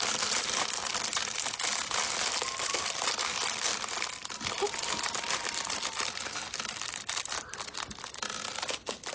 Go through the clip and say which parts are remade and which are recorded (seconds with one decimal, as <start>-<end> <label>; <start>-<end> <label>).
0.0-9.1 recorded